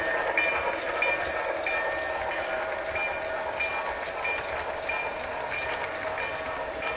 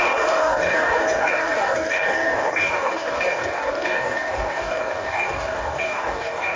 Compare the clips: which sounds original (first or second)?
first